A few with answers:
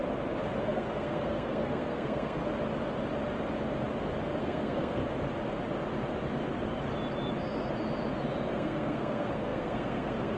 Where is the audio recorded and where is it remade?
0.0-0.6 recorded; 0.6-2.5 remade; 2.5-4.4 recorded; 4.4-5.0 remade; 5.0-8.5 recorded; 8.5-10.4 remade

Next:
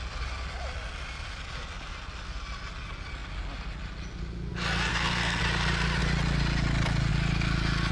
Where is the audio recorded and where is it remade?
0.0-4.9 recorded; 4.9-5.4 remade; 5.4-7.9 recorded

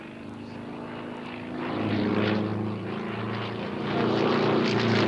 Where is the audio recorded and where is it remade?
0.0-5.1 recorded

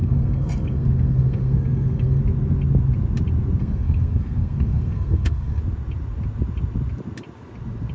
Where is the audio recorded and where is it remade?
0.0-2.2 remade; 2.2-3.6 recorded; 3.6-5.6 remade; 5.6-7.9 recorded